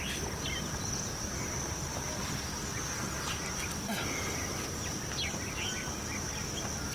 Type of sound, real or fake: real